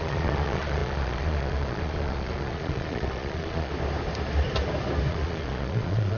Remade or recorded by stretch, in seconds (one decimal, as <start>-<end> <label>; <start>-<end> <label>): 0.0-3.7 remade; 3.7-5.1 recorded; 5.1-6.2 remade